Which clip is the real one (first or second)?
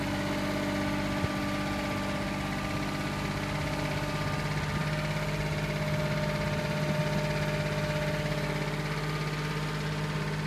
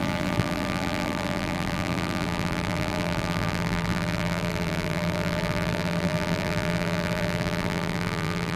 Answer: first